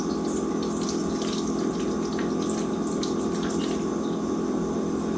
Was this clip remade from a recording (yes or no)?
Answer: no